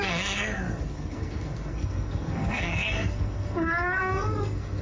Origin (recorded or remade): remade